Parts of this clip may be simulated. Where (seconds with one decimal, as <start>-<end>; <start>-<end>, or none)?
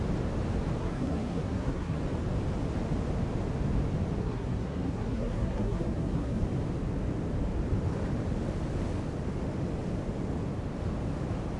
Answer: 0.8-2.0; 4.2-6.4